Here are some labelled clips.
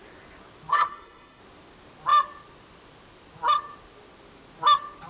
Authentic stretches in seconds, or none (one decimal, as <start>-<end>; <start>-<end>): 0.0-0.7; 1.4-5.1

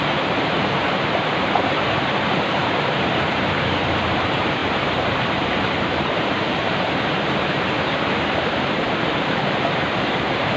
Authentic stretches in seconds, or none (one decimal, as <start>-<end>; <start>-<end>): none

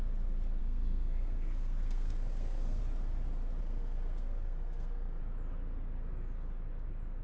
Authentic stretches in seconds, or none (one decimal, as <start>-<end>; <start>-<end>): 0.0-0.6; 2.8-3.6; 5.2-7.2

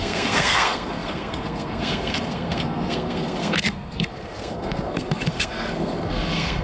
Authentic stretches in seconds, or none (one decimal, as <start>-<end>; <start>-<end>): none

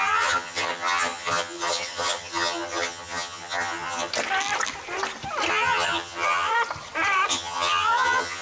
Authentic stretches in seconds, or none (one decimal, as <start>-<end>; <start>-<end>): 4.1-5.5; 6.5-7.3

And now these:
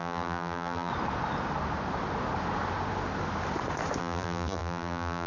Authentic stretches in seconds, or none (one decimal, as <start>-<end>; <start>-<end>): 0.9-4.0